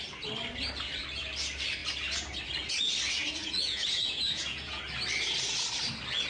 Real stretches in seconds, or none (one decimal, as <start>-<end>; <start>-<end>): 0.0-3.4; 4.8-6.3